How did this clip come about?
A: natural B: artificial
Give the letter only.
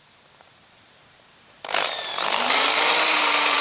B